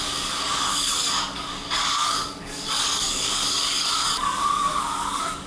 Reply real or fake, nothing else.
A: fake